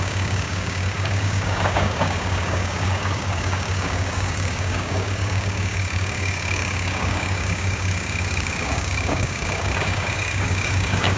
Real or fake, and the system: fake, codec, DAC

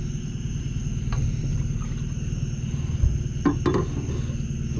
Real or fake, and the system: real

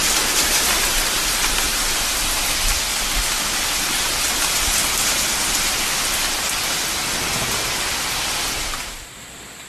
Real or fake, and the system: real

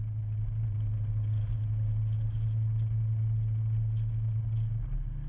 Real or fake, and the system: real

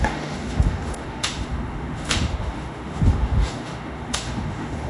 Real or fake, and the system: fake, autoencoder, DAC-VAE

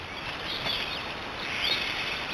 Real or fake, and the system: fake, vocoder, BigVGAN v2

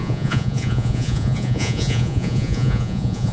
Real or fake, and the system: fake, vocoder, Vocos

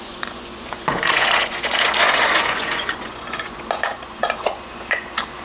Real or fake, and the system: fake, vocoder, Vocos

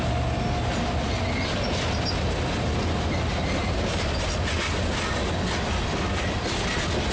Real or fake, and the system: real